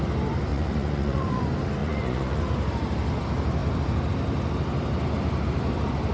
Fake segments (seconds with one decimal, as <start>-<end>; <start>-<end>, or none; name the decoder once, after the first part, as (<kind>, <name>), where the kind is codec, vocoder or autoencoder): 0.5-1.4 (vocoder, Vocos); 1.8-2.4